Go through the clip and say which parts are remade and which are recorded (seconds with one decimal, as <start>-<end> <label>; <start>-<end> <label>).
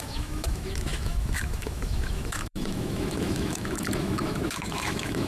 0.0-5.3 remade